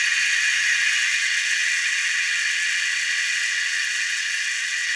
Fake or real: fake